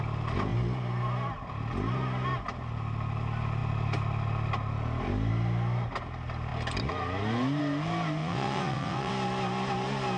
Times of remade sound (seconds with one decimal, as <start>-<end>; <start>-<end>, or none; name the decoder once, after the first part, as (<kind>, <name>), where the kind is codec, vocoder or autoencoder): 8.2-9.1 (vocoder, WaveNeXt)